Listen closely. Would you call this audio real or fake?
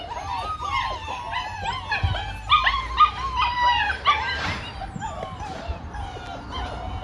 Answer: real